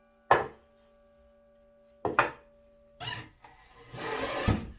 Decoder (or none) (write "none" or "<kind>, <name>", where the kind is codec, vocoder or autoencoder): none